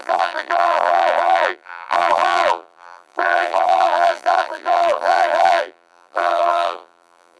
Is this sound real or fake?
fake